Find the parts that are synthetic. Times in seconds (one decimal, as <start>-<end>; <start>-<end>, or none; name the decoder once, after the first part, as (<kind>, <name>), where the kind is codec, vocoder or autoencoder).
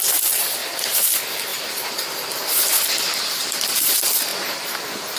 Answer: 0.0-5.2 (vocoder, BigVGAN v2)